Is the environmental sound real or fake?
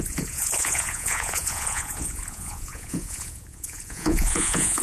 fake